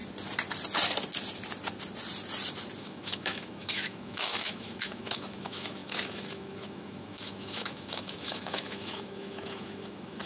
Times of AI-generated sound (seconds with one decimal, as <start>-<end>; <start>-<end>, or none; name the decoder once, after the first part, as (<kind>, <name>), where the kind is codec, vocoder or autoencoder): 2.8-10.3 (autoencoder, DAC-VAE)